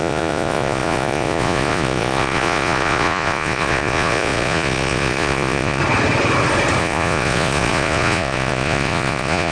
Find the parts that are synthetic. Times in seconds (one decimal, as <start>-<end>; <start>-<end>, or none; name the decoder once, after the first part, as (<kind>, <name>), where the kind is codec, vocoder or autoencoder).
0.0-5.8 (vocoder, Vocos); 6.8-9.5